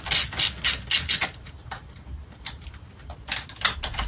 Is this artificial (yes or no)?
no